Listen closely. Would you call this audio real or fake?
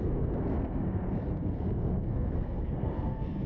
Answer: fake